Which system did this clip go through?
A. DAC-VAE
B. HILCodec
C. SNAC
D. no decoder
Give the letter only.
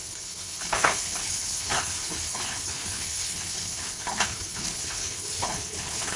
B